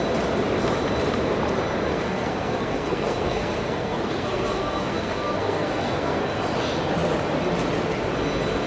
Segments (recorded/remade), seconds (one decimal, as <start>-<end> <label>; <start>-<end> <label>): 0.0-1.9 recorded; 1.9-6.2 remade; 6.2-8.7 recorded